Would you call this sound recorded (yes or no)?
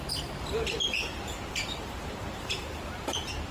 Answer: no